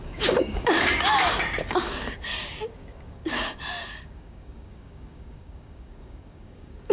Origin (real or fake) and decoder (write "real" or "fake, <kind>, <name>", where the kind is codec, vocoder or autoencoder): fake, codec, DAC